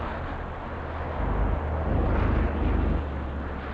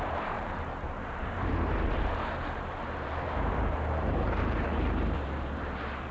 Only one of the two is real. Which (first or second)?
first